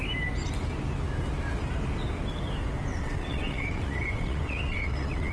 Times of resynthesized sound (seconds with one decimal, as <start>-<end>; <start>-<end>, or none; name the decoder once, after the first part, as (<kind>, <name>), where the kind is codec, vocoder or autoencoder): 2.9-5.3 (vocoder, WaveNeXt)